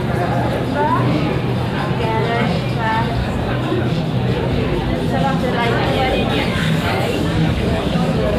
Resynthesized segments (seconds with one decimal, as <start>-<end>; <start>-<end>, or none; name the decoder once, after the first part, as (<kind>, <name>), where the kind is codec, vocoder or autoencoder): 3.2-4.0 (codec, DAC); 6.5-8.4